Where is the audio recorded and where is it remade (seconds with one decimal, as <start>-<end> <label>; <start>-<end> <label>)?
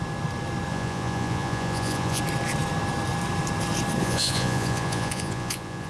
0.0-0.7 recorded; 0.7-2.2 remade; 2.2-4.0 recorded; 4.0-5.9 remade